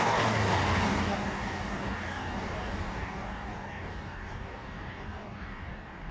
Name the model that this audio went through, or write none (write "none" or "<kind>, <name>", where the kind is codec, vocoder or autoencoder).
codec, DAC